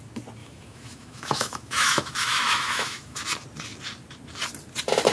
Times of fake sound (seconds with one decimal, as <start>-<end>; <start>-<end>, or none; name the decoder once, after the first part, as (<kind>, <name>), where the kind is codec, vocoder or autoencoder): 0.4-3.2 (autoencoder, DAC-VAE)